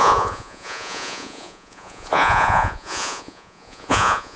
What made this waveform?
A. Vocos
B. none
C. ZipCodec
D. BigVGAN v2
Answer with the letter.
A